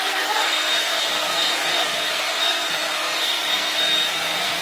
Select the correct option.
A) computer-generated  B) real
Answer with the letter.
A